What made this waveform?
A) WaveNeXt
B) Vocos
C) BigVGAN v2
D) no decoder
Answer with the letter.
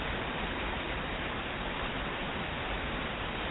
D